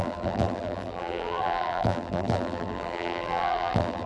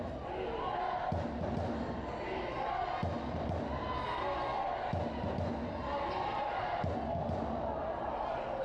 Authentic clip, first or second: second